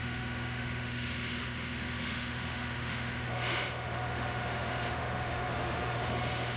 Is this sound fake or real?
fake